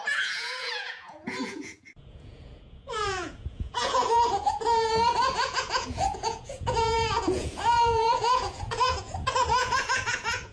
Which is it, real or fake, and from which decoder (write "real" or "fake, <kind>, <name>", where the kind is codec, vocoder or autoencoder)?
fake, vocoder, Vocos